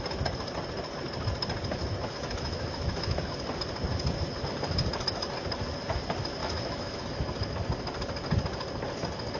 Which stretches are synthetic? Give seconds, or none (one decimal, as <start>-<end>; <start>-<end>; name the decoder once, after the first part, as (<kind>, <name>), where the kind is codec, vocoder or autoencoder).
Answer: 1.8-3.2 (autoencoder, DAC-VAE); 6.4-7.0